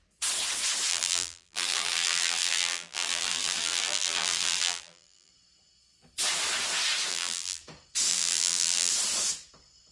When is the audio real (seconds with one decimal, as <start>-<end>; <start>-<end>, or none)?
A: 0.0-0.9; 5.3-7.1; 7.6-8.1; 8.9-9.9